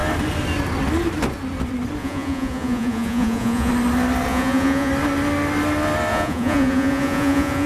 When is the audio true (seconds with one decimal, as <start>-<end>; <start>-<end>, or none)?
0.0-2.0; 3.7-4.3; 4.9-6.1